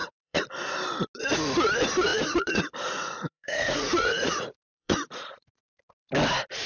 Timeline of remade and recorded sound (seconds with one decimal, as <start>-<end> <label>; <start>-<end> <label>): 0.0-0.5 remade; 0.5-2.1 recorded; 2.1-6.1 remade; 6.1-6.7 recorded